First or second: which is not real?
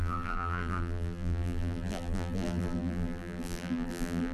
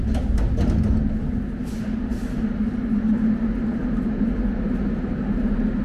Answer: first